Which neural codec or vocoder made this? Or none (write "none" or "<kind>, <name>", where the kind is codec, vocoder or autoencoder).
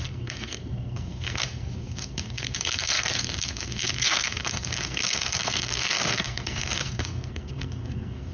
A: codec, SNAC